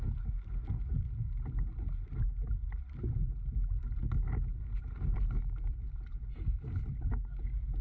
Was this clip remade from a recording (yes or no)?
no